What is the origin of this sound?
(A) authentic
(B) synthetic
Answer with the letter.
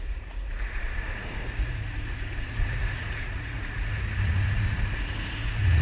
B